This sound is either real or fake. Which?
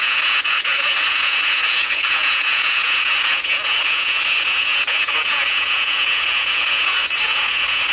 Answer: fake